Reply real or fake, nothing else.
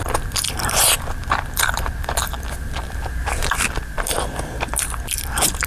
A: fake